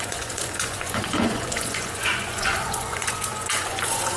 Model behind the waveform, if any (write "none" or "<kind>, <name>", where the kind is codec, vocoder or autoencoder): vocoder, Vocos